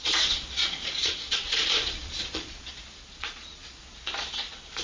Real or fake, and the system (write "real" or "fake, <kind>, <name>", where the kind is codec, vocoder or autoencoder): fake, vocoder, Vocos